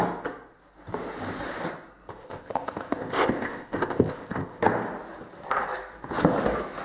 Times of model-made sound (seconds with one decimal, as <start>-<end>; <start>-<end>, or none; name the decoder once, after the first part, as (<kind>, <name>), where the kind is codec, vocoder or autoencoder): 2.2-4.6 (codec, ZipCodec)